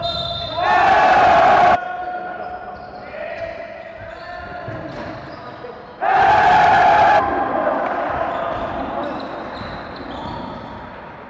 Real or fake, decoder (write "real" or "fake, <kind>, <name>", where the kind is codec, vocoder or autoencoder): real